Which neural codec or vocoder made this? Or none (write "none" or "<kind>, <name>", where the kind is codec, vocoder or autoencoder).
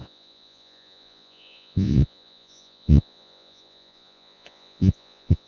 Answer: vocoder, Vocos